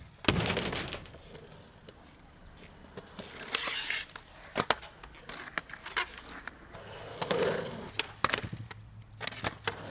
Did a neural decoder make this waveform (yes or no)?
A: no